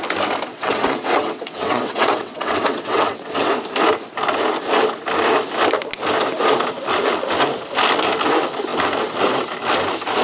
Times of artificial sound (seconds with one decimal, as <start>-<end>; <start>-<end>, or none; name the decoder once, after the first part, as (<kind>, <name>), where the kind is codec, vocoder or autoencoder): 0.5-3.5 (vocoder, WaveNeXt)